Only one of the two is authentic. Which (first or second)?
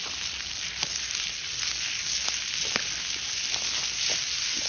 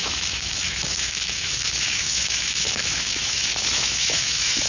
first